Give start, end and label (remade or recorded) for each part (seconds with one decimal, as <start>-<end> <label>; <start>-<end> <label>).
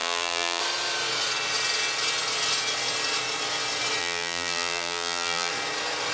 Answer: 0.0-0.6 remade; 0.6-4.0 recorded; 4.0-5.5 remade; 5.5-6.1 recorded